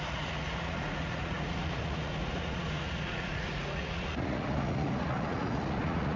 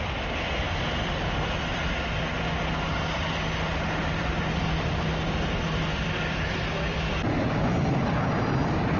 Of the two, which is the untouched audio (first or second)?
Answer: second